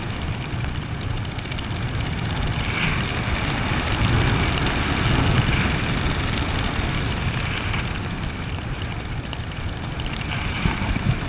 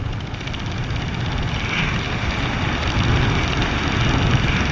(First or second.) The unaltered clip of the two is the second